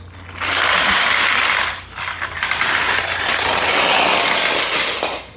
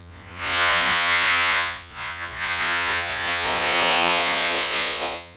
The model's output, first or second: second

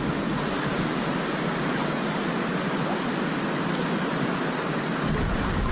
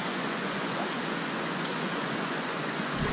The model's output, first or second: second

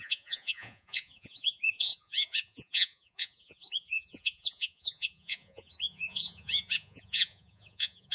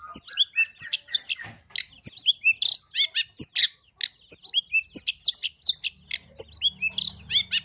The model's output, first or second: first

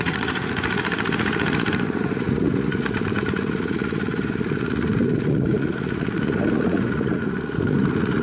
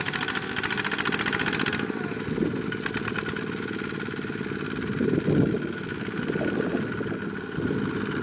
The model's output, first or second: first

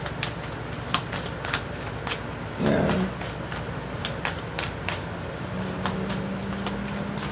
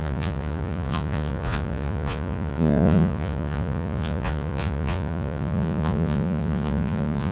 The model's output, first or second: second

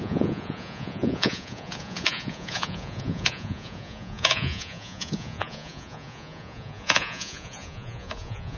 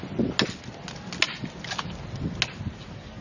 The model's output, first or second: first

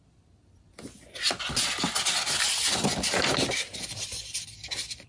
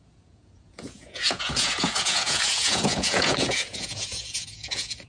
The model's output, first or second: second